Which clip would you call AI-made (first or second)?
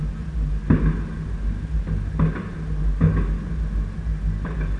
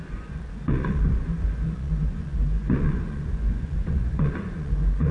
second